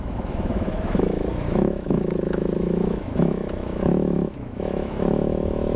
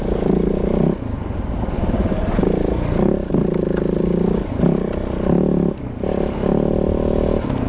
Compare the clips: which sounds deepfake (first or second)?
first